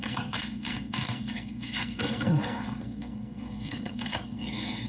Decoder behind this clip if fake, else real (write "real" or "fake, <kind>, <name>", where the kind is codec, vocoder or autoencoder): fake, codec, SNAC